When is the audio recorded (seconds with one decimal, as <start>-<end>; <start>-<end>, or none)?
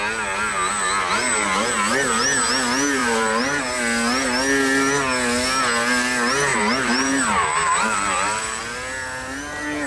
0.0-3.0; 3.6-6.5; 8.6-9.9